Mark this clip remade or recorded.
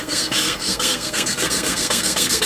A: remade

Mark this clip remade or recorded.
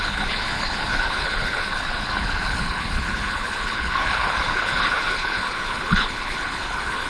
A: remade